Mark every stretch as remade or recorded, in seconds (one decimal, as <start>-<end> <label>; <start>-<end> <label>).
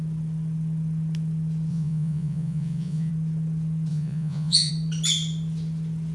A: 0.0-1.7 recorded; 1.7-3.1 remade; 3.1-3.9 recorded; 3.9-4.7 remade; 4.7-6.1 recorded